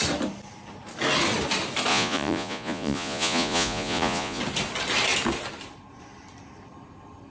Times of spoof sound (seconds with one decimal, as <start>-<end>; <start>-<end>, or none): 1.9-4.4